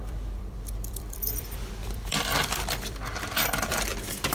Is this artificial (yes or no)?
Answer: yes